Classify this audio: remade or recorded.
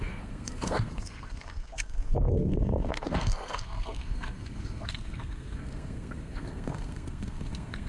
remade